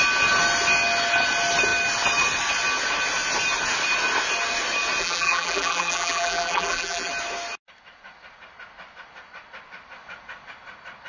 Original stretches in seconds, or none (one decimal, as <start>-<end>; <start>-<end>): 0.0-5.0; 7.1-11.1